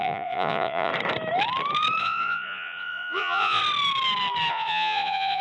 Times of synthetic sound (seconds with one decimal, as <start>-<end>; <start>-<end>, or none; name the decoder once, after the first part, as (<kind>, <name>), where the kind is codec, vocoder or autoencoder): 0.0-0.9 (vocoder, Vocos); 2.0-3.6; 4.5-5.4